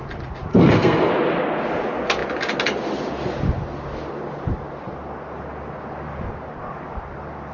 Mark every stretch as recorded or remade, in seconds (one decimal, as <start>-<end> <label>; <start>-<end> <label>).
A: 0.0-0.5 recorded; 0.5-1.1 remade; 1.1-7.5 recorded